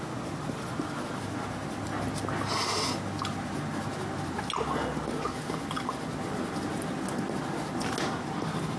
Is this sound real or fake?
real